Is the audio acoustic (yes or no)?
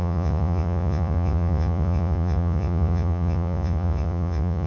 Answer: no